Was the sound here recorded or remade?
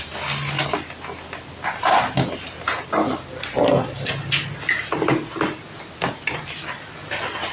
recorded